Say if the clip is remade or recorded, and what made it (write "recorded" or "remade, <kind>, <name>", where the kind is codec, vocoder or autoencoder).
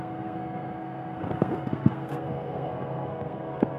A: remade, codec, SNAC